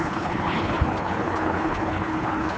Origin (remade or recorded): remade